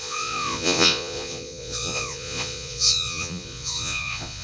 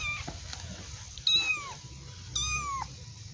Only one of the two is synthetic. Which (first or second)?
first